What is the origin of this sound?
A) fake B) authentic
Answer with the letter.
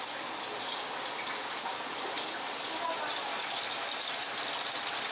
B